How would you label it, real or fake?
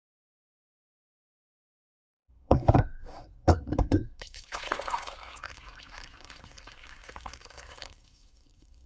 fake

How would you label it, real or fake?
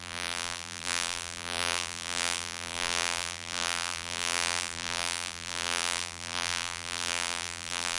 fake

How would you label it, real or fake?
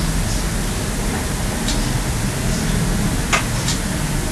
real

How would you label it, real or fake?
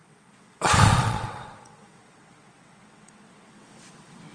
fake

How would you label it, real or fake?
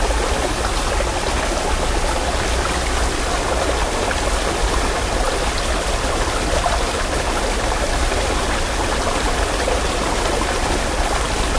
real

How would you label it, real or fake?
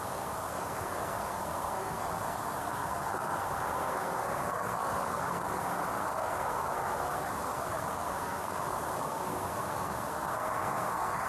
fake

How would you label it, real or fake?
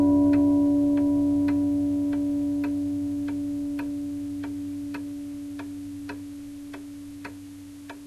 real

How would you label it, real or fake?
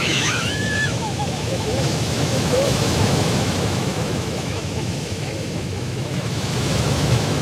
fake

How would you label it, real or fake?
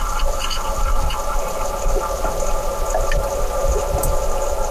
real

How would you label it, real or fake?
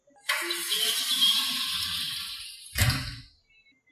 real